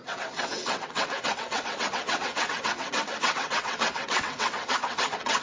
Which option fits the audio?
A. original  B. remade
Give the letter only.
B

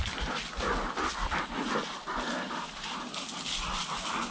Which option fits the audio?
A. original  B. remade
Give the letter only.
A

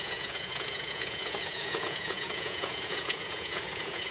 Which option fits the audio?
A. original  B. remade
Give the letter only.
B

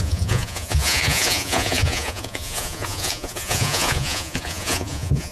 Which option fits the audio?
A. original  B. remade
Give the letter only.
B